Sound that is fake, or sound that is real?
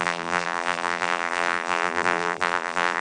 fake